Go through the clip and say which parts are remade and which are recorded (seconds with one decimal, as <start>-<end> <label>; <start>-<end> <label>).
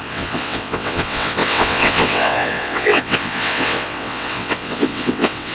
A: 0.0-5.5 remade